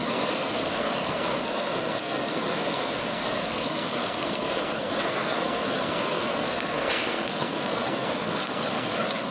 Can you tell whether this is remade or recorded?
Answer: remade